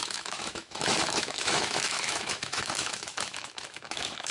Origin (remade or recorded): remade